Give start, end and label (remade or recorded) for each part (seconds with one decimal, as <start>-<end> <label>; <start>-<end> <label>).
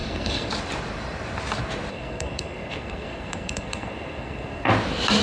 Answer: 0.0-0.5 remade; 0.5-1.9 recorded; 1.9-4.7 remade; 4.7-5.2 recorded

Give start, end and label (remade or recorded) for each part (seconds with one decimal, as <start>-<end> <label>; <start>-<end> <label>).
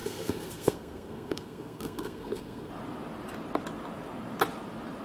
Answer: 0.0-2.7 remade; 2.7-5.0 recorded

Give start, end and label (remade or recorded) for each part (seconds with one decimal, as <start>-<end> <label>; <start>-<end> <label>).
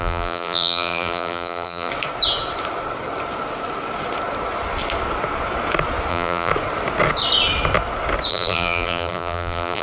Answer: 0.0-1.9 remade; 1.9-6.1 recorded; 6.1-6.5 remade; 6.5-8.3 recorded; 8.3-9.8 remade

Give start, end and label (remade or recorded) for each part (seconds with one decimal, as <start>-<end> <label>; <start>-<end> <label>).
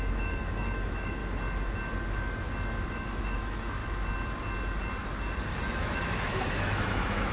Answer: 0.0-1.2 remade; 1.2-2.9 recorded; 2.9-3.8 remade; 3.8-5.7 recorded; 5.7-7.3 remade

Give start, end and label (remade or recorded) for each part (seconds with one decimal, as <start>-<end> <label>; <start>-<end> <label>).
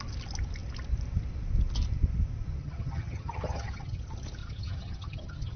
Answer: 0.0-2.6 recorded; 2.6-4.0 remade; 4.0-4.4 recorded; 4.4-5.6 remade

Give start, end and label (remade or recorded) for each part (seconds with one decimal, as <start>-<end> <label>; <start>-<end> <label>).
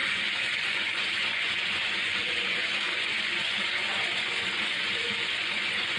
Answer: 0.0-6.0 remade